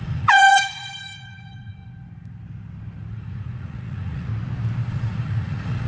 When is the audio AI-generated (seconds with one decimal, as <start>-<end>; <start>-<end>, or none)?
0.0-1.8; 3.1-4.3; 4.9-5.9